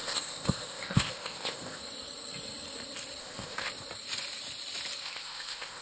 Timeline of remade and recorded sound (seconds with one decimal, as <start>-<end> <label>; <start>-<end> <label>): 0.0-1.8 remade; 1.8-3.2 recorded; 3.2-3.7 remade; 3.7-5.0 recorded; 5.0-5.8 remade